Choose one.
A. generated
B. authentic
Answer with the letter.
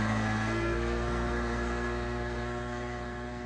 A